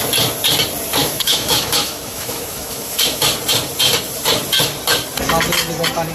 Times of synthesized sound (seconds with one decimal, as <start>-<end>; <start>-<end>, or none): 1.0-3.2